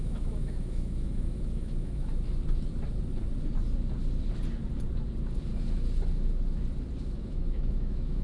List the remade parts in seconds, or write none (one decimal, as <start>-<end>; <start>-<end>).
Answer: 0.0-2.1; 7.0-8.2